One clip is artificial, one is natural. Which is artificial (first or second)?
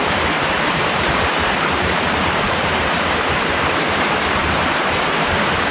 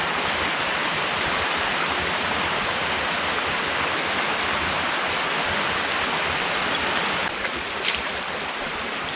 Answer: first